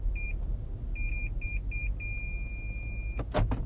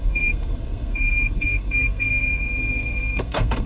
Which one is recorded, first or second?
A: first